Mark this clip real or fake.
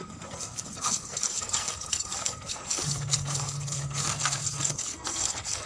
fake